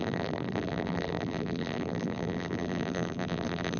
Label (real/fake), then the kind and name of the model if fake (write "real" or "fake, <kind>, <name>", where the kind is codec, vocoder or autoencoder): fake, vocoder, BigVGAN v2